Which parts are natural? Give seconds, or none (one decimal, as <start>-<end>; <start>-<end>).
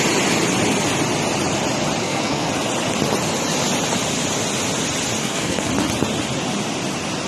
0.0-2.0; 2.5-5.2; 5.7-7.3